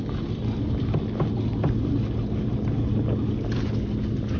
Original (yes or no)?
yes